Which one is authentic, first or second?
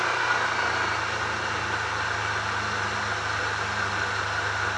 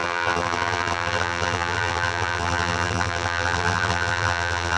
first